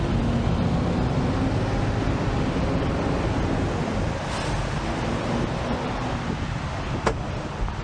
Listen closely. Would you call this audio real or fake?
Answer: real